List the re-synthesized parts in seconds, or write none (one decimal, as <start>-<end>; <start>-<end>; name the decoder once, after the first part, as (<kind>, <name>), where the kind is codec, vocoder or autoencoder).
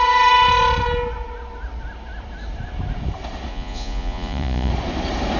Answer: 3.5-4.7 (vocoder, Vocos)